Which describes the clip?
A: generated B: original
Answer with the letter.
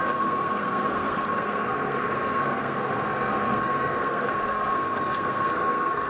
A